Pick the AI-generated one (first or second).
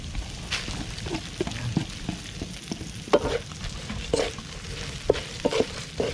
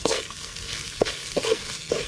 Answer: second